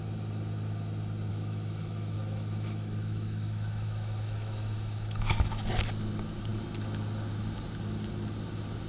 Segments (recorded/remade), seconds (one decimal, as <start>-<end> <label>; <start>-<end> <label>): 0.0-1.3 recorded; 1.3-5.6 remade; 5.6-8.9 recorded